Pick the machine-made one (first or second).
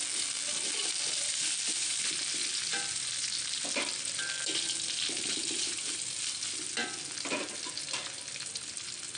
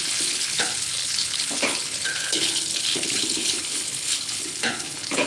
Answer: second